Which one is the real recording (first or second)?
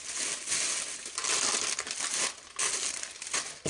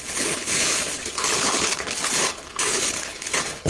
first